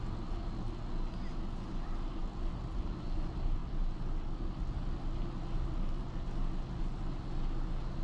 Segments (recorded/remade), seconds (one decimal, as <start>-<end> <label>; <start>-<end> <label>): 0.0-8.0 recorded